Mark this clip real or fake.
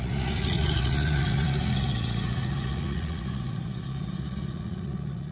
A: fake